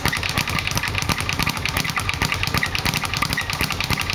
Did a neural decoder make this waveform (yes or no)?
no